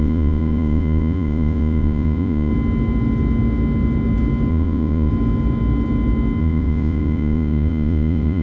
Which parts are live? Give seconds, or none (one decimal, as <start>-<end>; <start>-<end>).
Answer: 2.5-4.5; 5.1-6.4